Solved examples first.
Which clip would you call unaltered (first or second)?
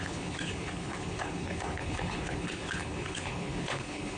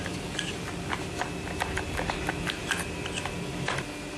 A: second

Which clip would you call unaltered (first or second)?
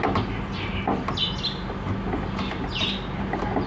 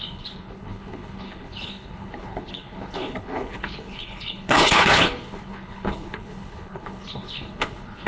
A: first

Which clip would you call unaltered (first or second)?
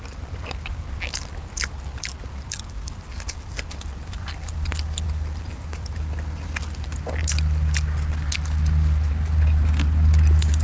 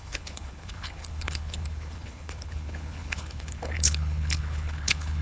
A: first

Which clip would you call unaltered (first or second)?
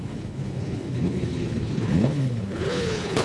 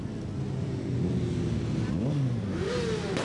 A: second